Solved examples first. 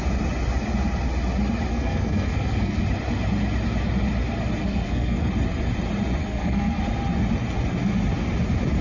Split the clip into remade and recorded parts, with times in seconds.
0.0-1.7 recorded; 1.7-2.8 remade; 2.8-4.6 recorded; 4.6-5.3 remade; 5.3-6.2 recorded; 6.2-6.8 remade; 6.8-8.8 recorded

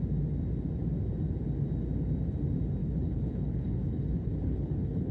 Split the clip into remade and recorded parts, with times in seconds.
0.0-2.8 recorded; 2.8-5.1 remade

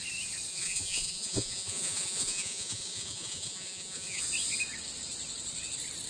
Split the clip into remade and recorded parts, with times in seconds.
0.0-0.5 recorded; 0.5-4.2 remade; 4.2-6.1 recorded

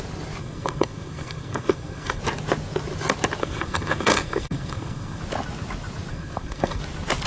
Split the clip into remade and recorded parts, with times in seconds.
0.0-0.4 recorded; 0.4-2.2 remade; 2.2-3.4 recorded; 3.4-5.2 remade; 5.2-6.1 recorded; 6.1-6.8 remade; 6.8-7.3 recorded

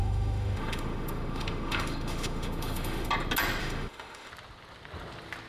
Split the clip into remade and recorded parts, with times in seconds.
0.0-3.1 remade; 3.1-3.6 recorded; 3.6-4.3 remade; 4.3-5.5 recorded